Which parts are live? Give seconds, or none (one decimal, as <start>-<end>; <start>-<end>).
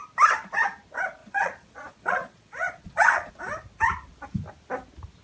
0.0-1.2; 3.3-5.2